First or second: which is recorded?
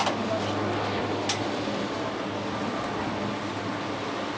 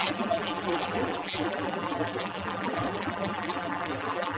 first